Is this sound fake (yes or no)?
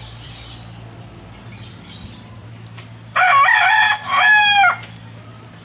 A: no